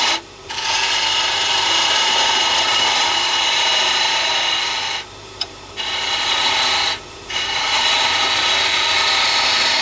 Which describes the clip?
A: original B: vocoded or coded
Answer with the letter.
B